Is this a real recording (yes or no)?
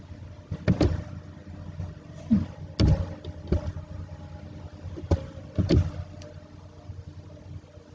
yes